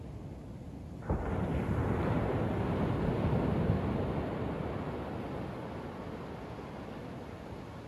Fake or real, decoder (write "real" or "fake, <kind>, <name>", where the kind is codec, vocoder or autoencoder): real